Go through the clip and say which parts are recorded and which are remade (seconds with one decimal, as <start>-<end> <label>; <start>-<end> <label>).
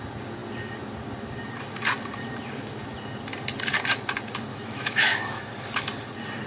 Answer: 0.0-4.5 recorded; 4.5-5.5 remade; 5.5-6.5 recorded